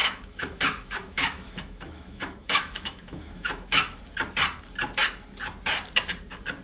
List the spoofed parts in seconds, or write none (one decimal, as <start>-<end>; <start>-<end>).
0.0-4.0